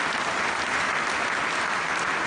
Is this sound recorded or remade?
recorded